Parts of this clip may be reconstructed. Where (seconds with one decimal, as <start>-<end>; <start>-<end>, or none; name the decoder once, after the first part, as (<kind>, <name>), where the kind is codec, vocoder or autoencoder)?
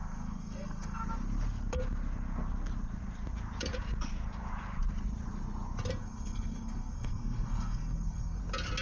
0.0-1.0 (codec, SNAC); 6.0-8.4